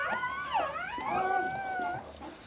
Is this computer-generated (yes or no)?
no